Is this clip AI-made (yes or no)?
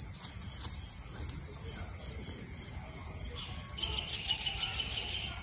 no